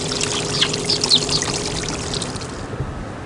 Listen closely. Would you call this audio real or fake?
real